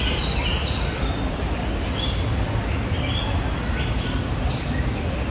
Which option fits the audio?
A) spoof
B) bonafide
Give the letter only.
B